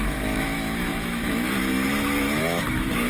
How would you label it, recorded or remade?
remade